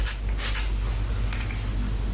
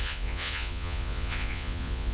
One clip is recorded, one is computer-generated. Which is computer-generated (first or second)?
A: second